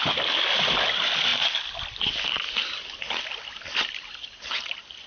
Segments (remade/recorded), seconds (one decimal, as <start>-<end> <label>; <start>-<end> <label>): 0.0-5.1 recorded